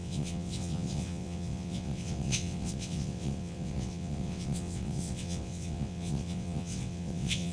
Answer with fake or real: fake